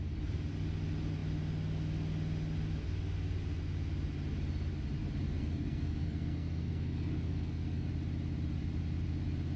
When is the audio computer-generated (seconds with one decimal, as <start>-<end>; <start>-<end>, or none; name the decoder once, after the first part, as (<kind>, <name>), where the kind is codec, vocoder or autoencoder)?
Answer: 5.3-7.9 (codec, SNAC)